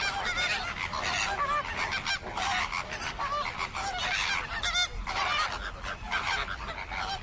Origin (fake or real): real